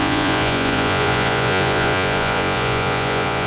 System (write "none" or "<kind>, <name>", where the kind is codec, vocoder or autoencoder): vocoder, Vocos